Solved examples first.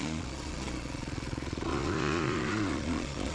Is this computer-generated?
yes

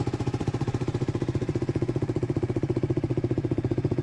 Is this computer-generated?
yes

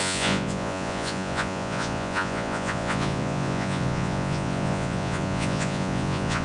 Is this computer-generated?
yes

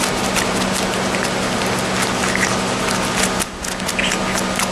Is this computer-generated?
no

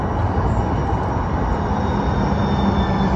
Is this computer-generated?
no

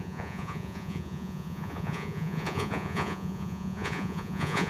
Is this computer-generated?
yes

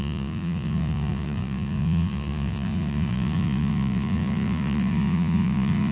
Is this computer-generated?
yes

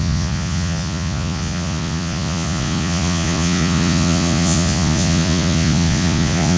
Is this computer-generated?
yes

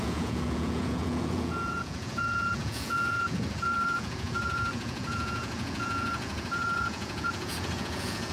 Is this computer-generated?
yes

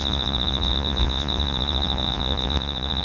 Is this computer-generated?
yes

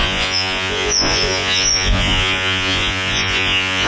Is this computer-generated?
yes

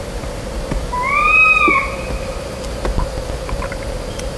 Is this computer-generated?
no